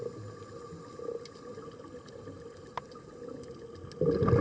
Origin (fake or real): real